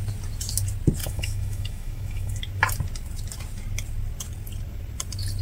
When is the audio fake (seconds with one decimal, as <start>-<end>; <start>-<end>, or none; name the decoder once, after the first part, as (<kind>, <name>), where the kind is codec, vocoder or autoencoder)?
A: 1.0-2.4 (autoencoder, DAC-VAE)